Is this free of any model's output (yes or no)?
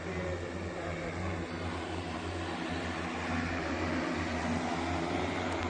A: yes